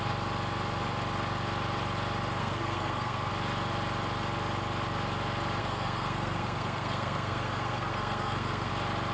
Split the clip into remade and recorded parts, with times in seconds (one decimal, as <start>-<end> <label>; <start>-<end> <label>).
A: 0.0-2.4 recorded; 2.4-3.3 remade; 3.3-5.6 recorded; 5.6-8.7 remade; 8.7-9.1 recorded